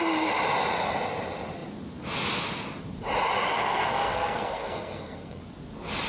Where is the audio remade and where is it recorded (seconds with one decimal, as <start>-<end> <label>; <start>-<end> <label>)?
0.0-3.5 recorded; 3.5-5.4 remade; 5.4-6.1 recorded